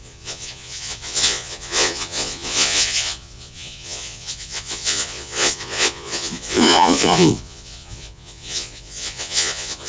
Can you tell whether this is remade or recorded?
remade